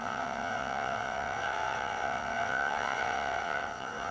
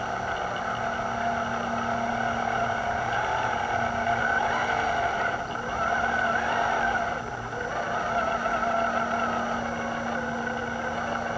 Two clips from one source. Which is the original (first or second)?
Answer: second